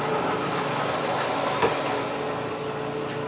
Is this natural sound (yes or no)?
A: yes